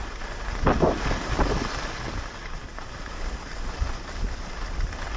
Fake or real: real